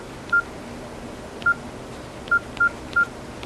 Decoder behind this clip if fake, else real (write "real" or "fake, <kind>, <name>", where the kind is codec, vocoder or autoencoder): real